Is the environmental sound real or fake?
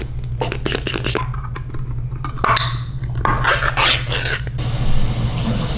real